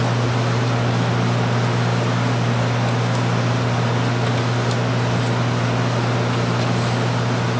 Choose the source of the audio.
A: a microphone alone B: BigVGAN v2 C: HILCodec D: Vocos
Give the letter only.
A